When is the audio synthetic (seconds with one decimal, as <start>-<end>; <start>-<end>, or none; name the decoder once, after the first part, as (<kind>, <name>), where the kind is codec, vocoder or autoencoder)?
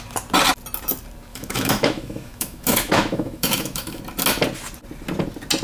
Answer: 1.3-4.0 (autoencoder, DAC-VAE)